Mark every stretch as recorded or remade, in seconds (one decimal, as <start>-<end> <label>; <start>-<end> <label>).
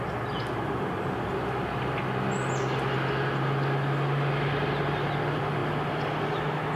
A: 0.0-6.8 recorded